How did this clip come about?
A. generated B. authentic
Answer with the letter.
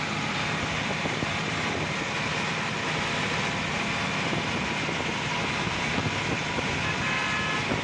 B